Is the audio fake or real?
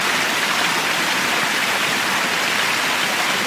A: real